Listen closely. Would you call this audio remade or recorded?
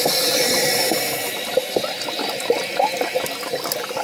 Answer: recorded